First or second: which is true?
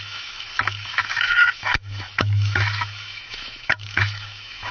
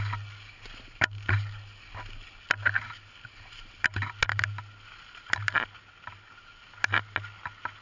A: second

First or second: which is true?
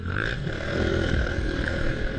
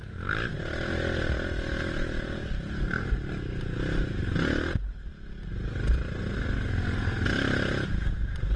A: second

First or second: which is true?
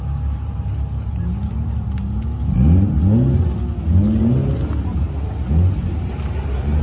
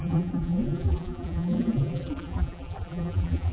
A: first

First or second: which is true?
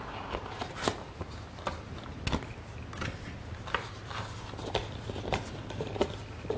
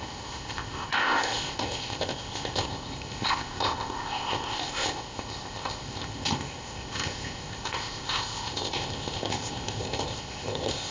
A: first